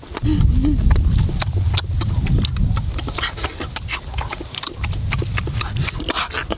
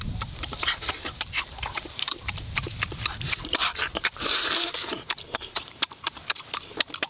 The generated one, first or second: second